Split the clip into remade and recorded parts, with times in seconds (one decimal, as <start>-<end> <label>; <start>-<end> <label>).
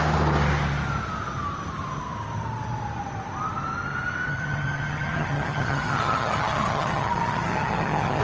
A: 0.0-4.3 recorded; 4.3-8.2 remade